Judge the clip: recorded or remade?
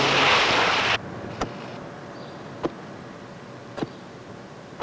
recorded